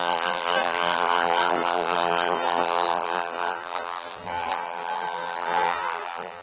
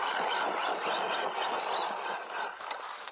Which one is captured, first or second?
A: second